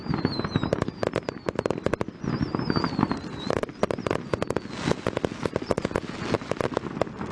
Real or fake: real